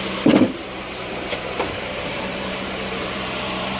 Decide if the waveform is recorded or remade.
remade